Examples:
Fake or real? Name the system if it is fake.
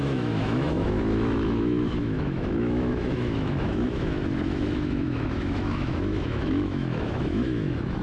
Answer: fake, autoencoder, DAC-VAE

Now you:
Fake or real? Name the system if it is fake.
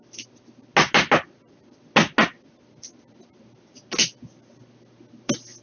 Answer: real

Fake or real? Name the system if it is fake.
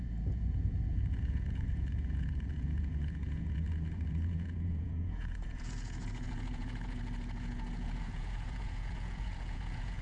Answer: fake, vocoder, Vocos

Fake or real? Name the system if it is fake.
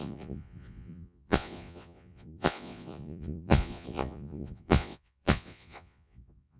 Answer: fake, vocoder, Vocos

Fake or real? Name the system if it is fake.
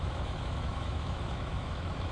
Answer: fake, autoencoder, DAC-VAE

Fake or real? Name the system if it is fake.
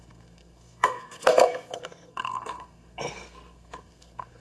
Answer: fake, codec, SNAC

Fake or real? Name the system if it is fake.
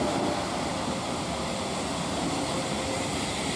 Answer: real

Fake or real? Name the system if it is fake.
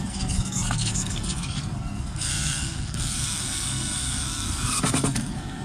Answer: fake, codec, SNAC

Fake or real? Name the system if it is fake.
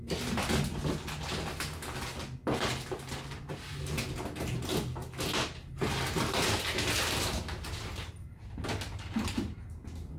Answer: real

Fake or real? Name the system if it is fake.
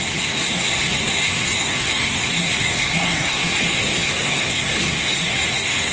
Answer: fake, codec, SNAC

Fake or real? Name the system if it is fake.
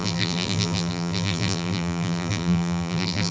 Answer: fake, vocoder, BigVGAN v2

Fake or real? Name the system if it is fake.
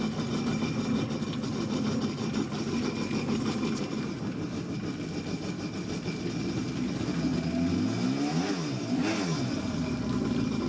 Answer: real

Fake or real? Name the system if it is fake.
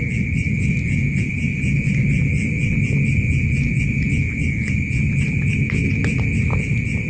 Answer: real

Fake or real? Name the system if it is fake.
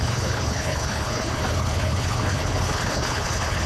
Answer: fake, codec, HILCodec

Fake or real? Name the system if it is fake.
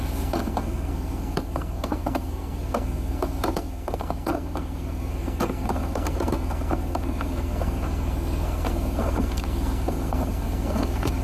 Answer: fake, codec, SNAC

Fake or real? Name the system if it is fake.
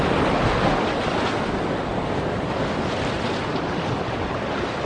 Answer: real